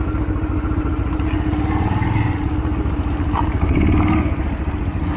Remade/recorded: recorded